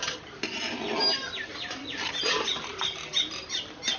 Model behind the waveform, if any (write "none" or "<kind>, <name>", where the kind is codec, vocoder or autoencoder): none